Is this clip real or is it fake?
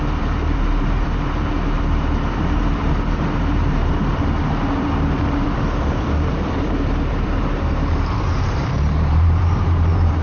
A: fake